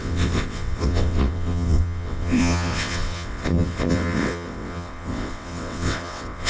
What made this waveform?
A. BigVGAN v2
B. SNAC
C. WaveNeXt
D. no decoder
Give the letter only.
C